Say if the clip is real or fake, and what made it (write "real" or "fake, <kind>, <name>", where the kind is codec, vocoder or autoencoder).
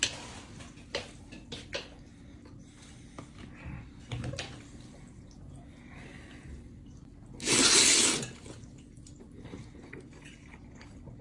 real